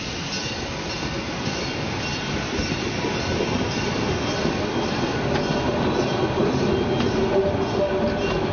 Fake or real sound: real